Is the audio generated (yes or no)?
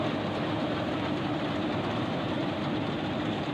yes